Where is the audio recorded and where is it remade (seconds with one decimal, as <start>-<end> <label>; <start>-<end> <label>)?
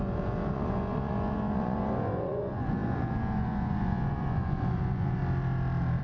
0.0-5.2 remade; 5.2-6.0 recorded